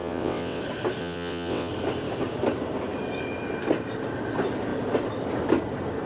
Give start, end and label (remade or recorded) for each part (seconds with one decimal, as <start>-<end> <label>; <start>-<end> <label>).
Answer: 0.0-0.6 remade; 0.6-1.0 recorded; 1.0-1.7 remade; 1.7-6.1 recorded